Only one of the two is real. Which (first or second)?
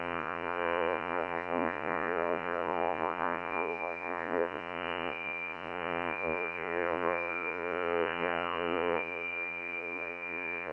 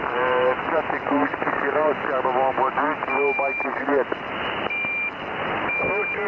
second